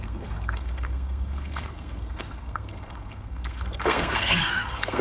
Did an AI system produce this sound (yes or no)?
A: yes